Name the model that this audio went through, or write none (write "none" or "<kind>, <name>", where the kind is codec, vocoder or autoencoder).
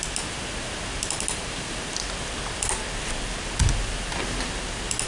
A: none